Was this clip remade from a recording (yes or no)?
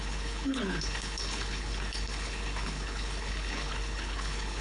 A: yes